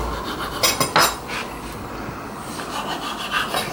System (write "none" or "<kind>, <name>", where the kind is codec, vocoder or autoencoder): none